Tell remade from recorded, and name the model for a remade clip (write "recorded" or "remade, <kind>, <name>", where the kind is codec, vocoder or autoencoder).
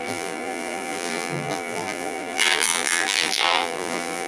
remade, vocoder, BigVGAN v2